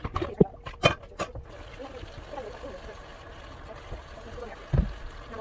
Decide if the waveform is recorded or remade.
recorded